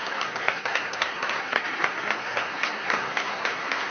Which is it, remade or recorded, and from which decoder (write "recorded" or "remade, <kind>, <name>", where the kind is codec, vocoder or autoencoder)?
remade, codec, SNAC